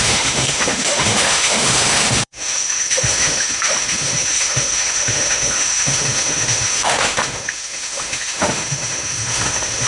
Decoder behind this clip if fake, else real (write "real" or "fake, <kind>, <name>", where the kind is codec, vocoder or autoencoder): fake, autoencoder, DAC-VAE